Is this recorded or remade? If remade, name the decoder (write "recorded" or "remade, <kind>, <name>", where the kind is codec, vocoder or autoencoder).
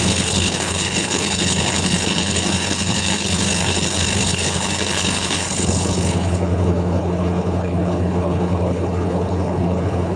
remade, codec, HILCodec